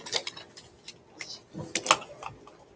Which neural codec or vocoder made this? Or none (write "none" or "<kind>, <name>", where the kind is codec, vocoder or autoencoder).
none